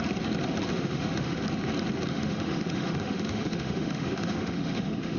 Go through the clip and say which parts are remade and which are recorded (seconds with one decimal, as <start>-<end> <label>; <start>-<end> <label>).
0.0-0.7 recorded; 0.7-1.4 remade; 1.4-2.1 recorded; 2.1-5.2 remade